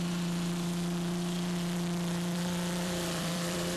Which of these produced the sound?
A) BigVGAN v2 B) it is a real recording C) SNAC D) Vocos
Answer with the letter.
A